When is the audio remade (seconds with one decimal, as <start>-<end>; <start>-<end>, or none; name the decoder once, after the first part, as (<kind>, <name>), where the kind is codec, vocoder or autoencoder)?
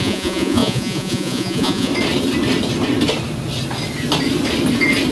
0.0-1.9 (vocoder, Vocos)